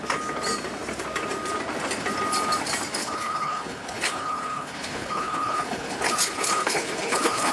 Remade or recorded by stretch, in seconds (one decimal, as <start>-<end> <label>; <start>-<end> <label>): 0.0-3.0 recorded; 3.0-7.5 remade